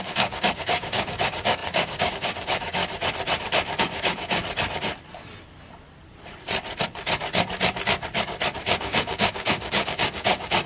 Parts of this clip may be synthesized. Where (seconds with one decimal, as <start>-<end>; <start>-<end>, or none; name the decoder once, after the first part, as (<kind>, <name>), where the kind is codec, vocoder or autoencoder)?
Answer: 0.0-2.8 (codec, DAC); 3.8-4.4; 8.6-10.7